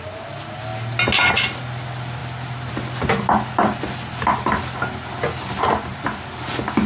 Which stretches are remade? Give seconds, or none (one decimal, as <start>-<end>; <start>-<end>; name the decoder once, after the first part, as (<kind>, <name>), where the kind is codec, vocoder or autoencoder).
none